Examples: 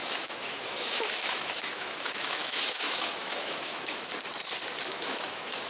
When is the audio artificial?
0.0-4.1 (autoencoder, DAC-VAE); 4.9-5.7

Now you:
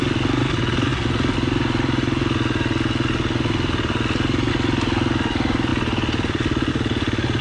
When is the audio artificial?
none

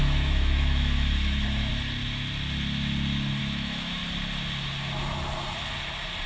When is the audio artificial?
0.0-1.7 (autoencoder, DAC-VAE); 3.4-4.0